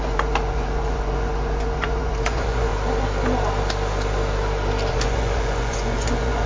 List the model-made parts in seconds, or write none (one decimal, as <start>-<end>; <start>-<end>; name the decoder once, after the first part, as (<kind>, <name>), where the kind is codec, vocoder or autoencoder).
0.0-2.7 (vocoder, Vocos); 4.9-6.5